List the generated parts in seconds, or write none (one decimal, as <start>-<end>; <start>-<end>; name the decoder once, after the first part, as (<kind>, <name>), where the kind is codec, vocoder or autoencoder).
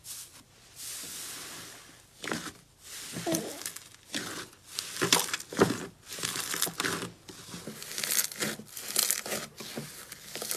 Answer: none